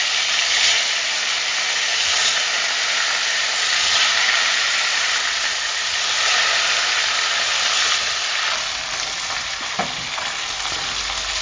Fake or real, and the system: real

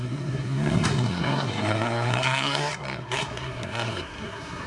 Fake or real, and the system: fake, codec, SNAC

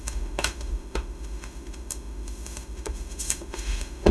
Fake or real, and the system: fake, autoencoder, DAC-VAE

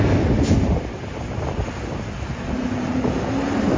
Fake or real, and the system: real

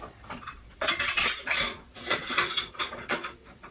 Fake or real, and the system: fake, vocoder, Vocos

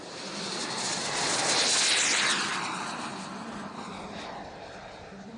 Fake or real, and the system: real